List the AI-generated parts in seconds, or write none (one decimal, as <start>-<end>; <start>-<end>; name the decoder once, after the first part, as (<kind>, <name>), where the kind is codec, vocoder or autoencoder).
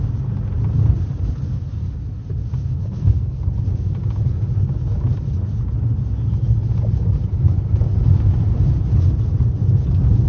2.8-3.4 (codec, SNAC)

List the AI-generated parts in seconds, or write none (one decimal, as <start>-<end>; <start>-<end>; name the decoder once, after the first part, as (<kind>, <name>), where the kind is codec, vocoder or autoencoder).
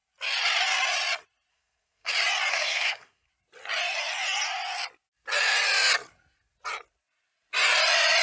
1.5-2.1 (codec, SNAC); 2.5-3.3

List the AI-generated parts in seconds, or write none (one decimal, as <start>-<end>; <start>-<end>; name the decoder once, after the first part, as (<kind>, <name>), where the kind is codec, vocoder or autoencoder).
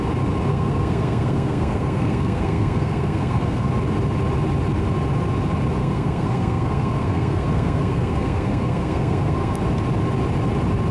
0.5-3.7 (codec, SNAC); 5.8-9.6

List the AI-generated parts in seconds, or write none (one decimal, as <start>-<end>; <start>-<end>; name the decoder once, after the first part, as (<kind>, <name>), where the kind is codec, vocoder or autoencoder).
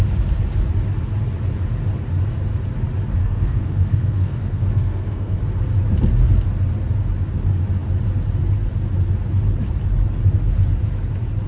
3.2-5.4 (codec, SNAC)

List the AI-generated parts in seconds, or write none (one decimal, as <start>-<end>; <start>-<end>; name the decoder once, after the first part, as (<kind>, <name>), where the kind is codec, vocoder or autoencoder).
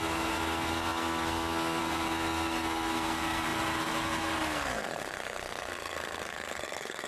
0.0-7.1 (codec, SNAC)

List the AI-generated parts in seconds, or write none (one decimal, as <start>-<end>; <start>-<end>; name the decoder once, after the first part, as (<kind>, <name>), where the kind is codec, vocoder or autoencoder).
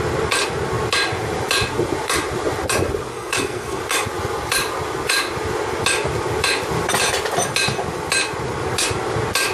3.1-3.8 (codec, SNAC)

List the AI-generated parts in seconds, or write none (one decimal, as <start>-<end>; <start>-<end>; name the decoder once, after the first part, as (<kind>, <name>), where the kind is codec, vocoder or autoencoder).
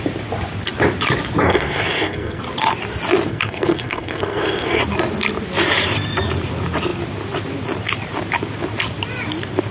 1.4-2.4 (codec, SNAC); 3.3-4.8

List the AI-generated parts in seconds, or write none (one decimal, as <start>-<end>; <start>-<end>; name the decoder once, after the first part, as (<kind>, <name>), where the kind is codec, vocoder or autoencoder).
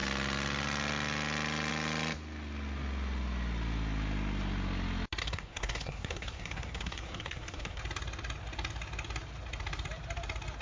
5.2-7.8 (codec, SNAC)